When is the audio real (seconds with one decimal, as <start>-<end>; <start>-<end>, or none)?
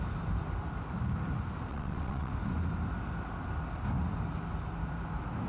0.0-1.7; 2.3-5.5